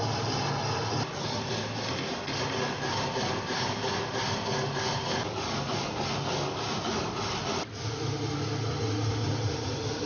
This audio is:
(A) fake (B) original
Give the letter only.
B